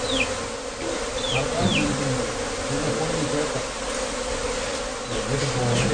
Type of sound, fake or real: real